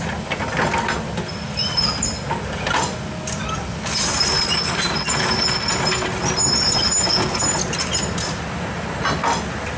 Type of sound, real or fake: real